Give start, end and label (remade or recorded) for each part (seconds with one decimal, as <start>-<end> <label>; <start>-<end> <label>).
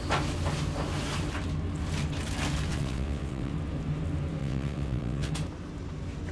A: 0.0-2.7 recorded; 2.7-3.5 remade; 3.5-4.4 recorded; 4.4-5.3 remade; 5.3-6.3 recorded